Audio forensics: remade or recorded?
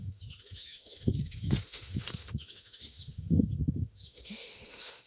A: remade